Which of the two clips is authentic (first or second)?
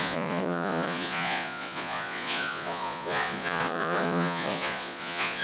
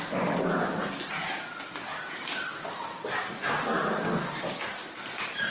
second